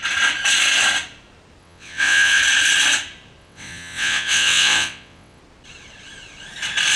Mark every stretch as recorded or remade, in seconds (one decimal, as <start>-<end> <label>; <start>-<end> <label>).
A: 0.0-1.6 recorded; 1.6-2.4 remade; 2.4-3.4 recorded; 3.4-5.4 remade; 5.4-7.0 recorded